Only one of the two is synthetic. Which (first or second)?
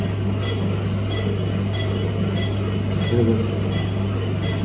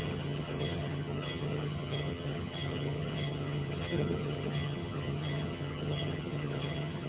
second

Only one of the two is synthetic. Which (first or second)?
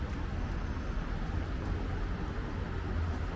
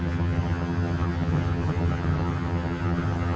second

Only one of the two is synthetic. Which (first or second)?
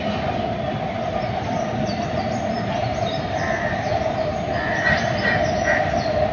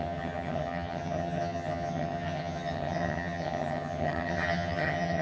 second